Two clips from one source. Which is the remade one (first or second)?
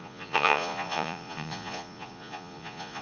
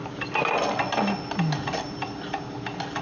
first